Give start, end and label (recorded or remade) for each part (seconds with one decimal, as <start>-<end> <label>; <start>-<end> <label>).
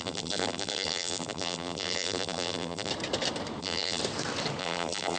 0.0-2.9 remade; 2.9-3.6 recorded; 3.6-4.0 remade; 4.0-4.6 recorded; 4.6-5.2 remade